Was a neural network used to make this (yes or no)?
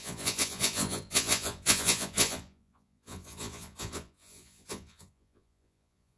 yes